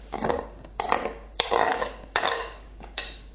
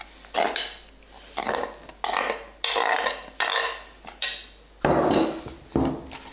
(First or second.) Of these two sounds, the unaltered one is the second